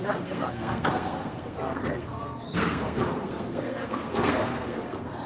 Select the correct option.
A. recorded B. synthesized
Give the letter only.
B